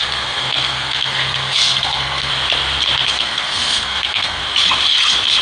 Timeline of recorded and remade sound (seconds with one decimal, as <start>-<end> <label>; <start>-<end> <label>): 0.0-2.3 remade; 2.3-3.1 recorded; 3.1-4.4 remade; 4.4-5.4 recorded